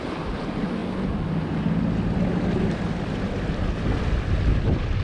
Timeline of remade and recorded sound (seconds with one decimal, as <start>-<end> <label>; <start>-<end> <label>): 0.0-5.0 recorded